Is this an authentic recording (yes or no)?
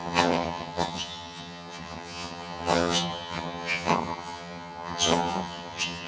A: no